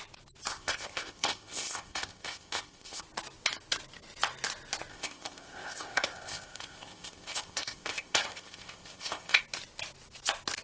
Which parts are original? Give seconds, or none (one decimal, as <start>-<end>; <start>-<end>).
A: 0.0-0.5; 3.0-4.9; 9.4-10.6